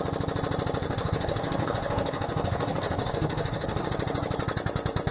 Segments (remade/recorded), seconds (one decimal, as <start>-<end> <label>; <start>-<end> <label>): 0.0-0.8 recorded; 0.8-3.9 remade; 3.9-5.1 recorded